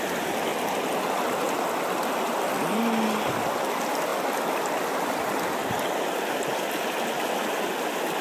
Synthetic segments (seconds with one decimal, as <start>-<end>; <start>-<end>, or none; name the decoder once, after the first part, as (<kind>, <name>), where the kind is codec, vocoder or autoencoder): none